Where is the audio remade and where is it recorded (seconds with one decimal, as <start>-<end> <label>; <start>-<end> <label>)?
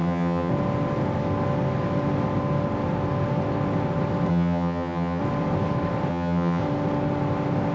0.0-0.5 remade; 0.5-4.3 recorded; 4.3-5.2 remade; 5.2-6.1 recorded; 6.1-6.6 remade; 6.6-7.7 recorded